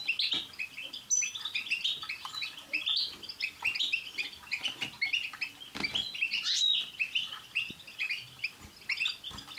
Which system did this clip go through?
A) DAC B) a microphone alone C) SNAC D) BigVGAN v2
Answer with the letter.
B